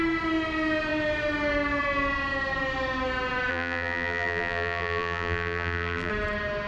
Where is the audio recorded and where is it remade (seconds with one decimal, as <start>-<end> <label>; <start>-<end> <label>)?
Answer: 0.0-3.5 recorded; 3.5-6.1 remade; 6.1-6.7 recorded